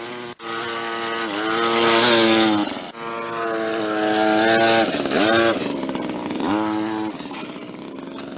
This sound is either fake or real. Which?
real